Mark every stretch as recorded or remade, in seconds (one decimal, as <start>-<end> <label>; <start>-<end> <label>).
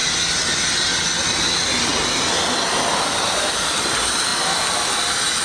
0.0-5.4 recorded